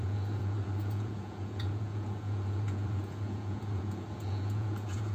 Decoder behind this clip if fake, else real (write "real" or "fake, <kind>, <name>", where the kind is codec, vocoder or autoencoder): fake, vocoder, Vocos